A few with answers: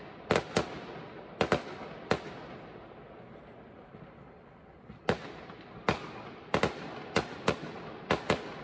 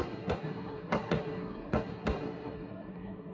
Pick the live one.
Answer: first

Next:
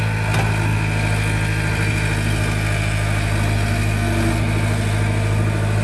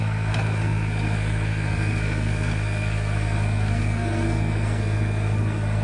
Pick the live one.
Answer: first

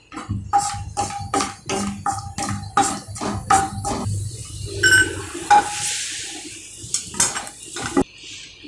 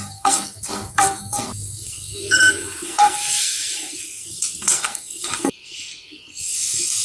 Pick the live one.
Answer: first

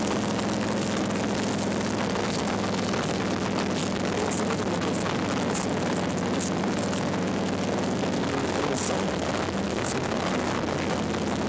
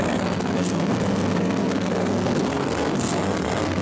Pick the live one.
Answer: first